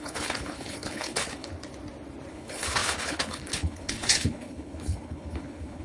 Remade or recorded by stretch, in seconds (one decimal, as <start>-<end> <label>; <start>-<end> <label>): 0.0-1.5 remade; 1.5-2.3 recorded; 2.3-5.8 remade